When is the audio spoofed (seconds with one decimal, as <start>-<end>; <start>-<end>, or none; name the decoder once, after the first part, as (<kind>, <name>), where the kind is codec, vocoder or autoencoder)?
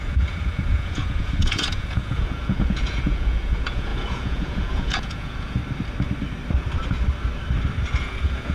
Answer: 0.0-5.6 (vocoder, Vocos); 8.0-8.5